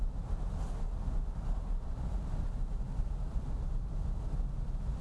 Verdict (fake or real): real